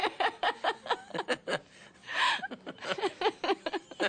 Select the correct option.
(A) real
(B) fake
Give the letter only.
A